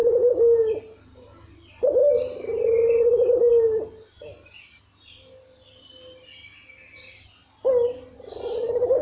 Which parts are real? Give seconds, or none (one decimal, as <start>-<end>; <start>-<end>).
0.8-9.0